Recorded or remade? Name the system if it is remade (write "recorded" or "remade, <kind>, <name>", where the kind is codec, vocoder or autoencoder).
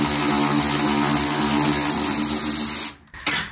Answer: recorded